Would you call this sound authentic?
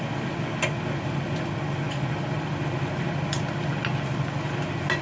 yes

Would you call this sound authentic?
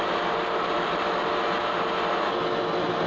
yes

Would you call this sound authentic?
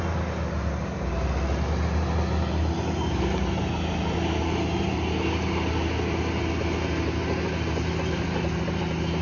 yes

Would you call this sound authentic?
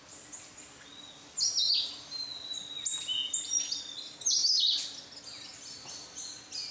yes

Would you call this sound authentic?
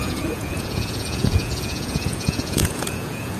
no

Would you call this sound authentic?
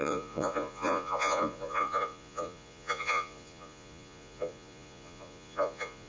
no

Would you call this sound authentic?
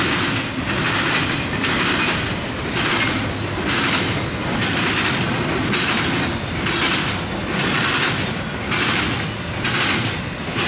yes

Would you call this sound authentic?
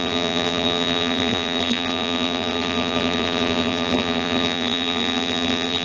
no